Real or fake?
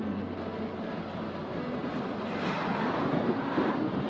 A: real